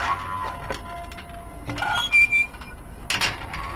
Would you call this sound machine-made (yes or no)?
no